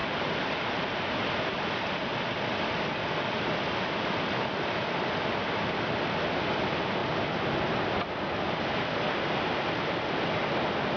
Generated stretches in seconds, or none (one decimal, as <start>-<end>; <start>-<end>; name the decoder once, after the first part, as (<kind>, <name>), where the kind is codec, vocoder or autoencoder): 0.0-3.4 (vocoder, BigVGAN v2)